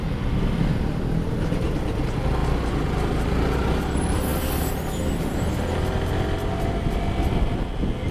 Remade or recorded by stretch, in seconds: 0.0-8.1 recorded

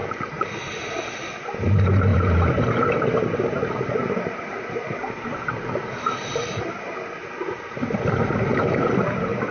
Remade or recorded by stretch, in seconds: 0.0-2.1 recorded; 2.1-2.6 remade; 2.6-9.5 recorded

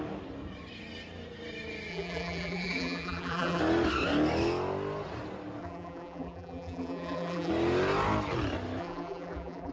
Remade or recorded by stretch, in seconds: 0.0-1.9 recorded; 1.9-3.6 remade; 3.6-5.6 recorded; 5.6-7.5 remade; 7.5-8.8 recorded; 8.8-9.7 remade

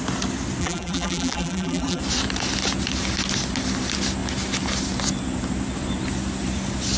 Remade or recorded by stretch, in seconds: 0.0-0.6 recorded; 0.6-2.0 remade; 2.0-7.0 recorded

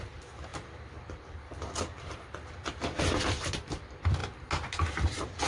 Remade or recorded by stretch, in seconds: 0.0-0.5 recorded; 0.5-3.8 remade; 3.8-5.5 recorded